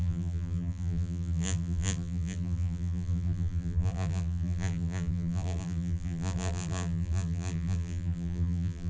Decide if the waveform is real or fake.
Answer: fake